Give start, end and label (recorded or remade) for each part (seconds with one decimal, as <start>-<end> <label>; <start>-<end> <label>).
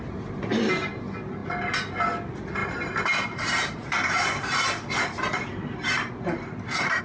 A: 0.0-2.6 recorded; 2.6-7.0 remade